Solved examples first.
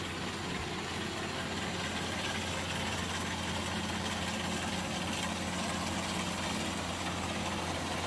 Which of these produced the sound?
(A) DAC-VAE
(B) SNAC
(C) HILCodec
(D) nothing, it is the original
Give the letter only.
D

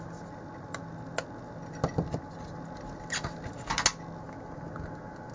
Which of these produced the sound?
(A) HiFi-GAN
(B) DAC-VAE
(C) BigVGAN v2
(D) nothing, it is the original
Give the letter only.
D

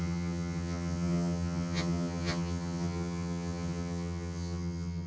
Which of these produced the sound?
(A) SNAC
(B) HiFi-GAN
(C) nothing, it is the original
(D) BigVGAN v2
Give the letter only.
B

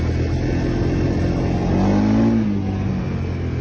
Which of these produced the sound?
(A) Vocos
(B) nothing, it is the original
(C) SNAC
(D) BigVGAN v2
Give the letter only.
B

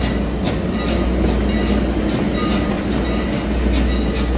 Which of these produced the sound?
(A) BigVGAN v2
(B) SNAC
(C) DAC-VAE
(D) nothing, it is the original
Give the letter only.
D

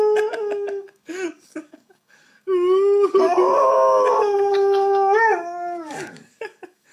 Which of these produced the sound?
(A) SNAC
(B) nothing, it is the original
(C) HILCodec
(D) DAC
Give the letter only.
D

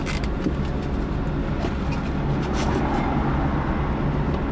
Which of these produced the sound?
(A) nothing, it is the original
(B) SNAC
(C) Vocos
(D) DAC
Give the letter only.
A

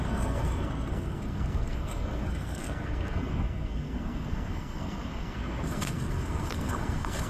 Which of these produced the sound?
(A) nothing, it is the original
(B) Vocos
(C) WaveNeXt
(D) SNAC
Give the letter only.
D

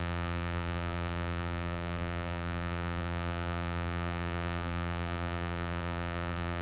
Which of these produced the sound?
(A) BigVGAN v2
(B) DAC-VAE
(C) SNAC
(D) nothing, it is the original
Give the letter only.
A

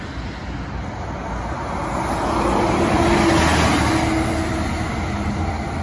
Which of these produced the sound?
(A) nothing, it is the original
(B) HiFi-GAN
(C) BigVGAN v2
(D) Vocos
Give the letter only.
A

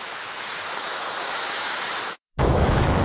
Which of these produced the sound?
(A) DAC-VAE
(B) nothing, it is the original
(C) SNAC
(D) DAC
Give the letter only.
A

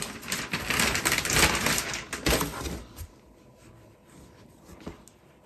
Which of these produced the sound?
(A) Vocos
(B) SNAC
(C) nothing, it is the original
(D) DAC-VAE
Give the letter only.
C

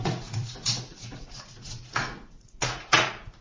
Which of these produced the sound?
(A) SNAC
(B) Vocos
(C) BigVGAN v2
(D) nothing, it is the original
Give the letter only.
B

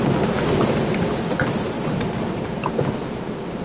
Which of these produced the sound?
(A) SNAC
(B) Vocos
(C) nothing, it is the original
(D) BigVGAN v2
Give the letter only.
C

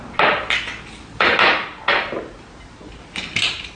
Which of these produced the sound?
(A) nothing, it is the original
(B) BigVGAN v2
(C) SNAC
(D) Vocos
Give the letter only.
A